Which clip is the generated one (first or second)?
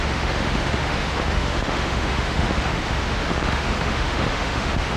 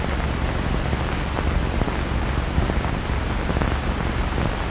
first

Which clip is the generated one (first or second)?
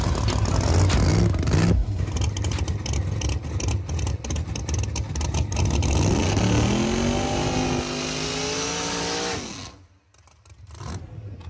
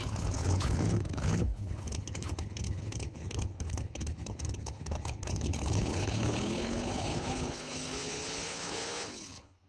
second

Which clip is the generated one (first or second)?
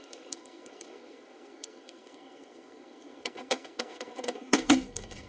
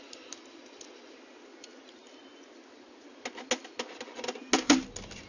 first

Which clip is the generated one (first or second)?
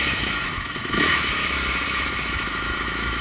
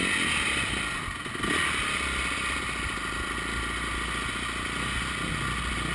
first